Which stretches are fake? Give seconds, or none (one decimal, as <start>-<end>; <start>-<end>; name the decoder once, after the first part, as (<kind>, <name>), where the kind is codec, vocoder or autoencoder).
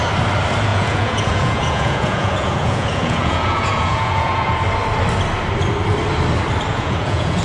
0.7-4.6 (vocoder, Vocos); 6.7-7.4